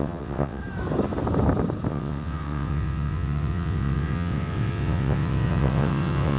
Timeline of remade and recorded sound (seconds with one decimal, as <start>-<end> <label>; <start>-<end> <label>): 0.0-0.6 remade; 0.6-1.9 recorded; 1.9-6.4 remade